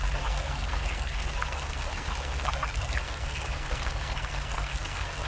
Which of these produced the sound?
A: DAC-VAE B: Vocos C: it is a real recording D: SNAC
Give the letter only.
D